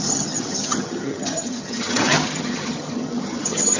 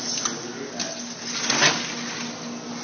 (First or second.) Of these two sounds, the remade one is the first